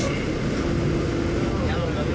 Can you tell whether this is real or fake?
real